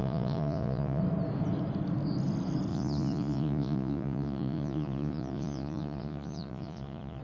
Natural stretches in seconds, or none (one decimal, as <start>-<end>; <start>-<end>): 1.0-2.7

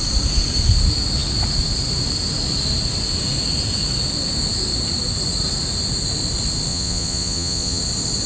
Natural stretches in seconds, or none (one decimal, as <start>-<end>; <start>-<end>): 0.0-6.7; 7.8-8.3

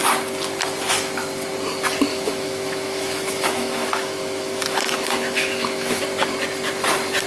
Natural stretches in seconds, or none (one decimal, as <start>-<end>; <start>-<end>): 0.0-2.1; 6.0-7.3

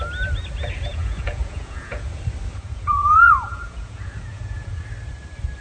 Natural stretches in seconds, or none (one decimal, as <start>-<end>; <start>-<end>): 0.0-0.9; 2.1-2.5; 4.8-5.6

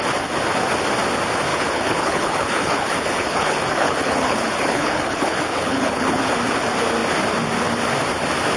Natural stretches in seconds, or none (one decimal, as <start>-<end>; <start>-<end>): 0.0-1.5; 6.2-8.6

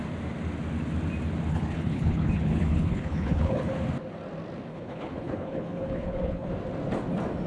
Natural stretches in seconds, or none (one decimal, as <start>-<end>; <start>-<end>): 0.0-1.5; 3.7-4.7; 6.5-7.5